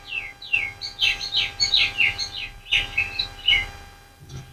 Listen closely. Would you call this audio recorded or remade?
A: recorded